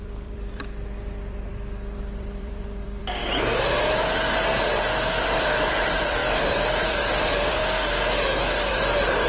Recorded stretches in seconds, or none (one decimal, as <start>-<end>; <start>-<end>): 3.2-5.1; 7.6-8.7